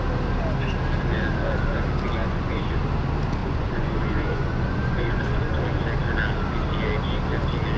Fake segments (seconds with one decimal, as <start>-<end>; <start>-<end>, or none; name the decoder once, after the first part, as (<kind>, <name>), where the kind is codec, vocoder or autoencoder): 2.2-2.8 (vocoder, Vocos); 3.4-5.6

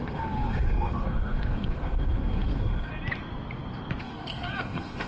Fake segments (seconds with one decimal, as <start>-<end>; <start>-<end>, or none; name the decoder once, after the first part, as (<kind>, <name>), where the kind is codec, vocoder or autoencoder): 0.0-2.9 (codec, SNAC); 4.0-5.1

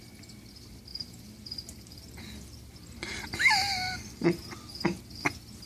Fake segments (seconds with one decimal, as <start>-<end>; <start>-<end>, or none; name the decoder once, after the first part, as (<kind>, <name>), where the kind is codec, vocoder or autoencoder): 0.9-4.3 (vocoder, BigVGAN v2)

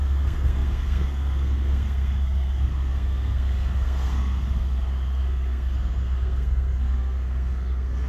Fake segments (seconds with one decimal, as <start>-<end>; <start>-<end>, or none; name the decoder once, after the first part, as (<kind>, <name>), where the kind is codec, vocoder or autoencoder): 0.0-8.1 (codec, SNAC)